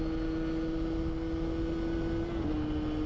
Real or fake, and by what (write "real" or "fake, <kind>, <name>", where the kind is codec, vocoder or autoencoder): real